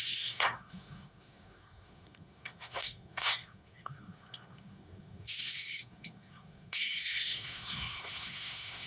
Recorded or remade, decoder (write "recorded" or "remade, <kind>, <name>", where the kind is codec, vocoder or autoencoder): remade, codec, SNAC